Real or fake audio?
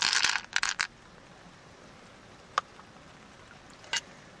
real